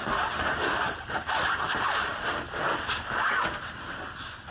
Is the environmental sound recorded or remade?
recorded